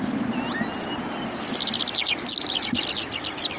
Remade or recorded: recorded